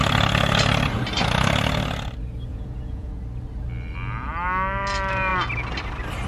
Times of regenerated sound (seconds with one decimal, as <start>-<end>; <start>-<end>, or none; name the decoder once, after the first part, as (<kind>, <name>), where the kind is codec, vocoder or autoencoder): 2.5-3.1 (vocoder, Vocos)